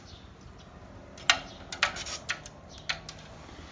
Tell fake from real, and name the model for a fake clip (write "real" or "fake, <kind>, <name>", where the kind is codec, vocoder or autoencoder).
real